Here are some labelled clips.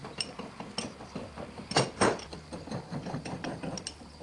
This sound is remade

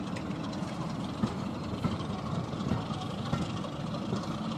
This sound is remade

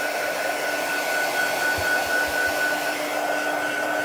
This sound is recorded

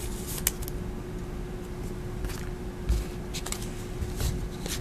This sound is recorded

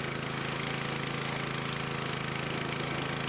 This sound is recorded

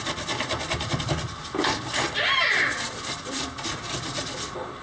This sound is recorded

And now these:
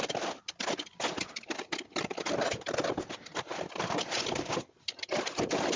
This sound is recorded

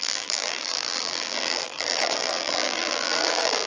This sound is remade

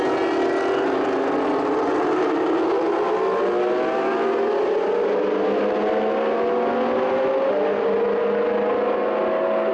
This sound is recorded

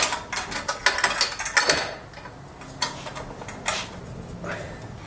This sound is recorded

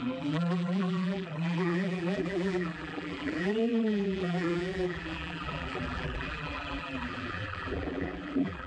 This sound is remade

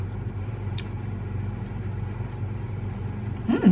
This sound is remade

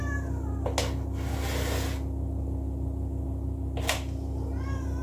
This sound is recorded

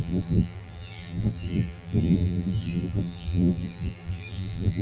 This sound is remade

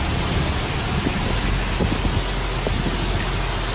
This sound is recorded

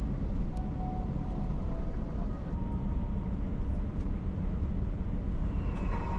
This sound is recorded